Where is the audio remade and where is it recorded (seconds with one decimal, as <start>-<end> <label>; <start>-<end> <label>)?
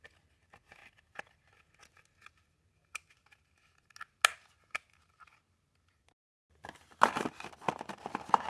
0.0-8.5 recorded